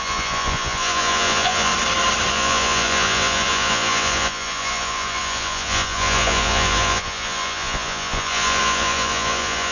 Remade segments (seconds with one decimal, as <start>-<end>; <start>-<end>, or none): 0.0-1.7; 2.3-9.7